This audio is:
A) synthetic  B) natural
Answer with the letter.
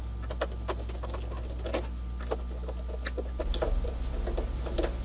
B